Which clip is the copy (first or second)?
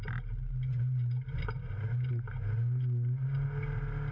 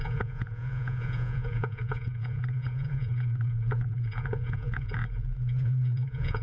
second